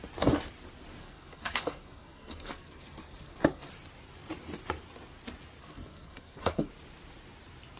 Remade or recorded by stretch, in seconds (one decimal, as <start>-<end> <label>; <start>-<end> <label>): 0.0-1.0 recorded; 1.0-3.7 remade; 3.7-5.6 recorded; 5.6-6.7 remade; 6.7-7.8 recorded